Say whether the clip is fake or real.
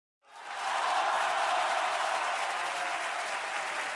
real